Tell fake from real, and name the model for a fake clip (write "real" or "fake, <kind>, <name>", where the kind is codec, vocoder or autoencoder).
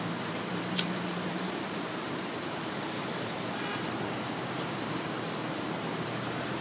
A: fake, vocoder, BigVGAN v2